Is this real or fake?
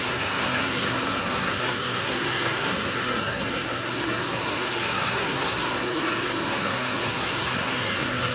fake